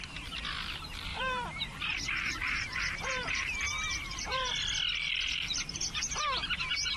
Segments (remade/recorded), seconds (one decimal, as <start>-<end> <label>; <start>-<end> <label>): 0.0-1.1 recorded; 1.1-4.5 remade; 4.5-7.0 recorded